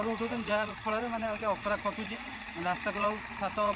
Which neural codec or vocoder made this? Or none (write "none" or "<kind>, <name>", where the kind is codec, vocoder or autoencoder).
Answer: vocoder, Vocos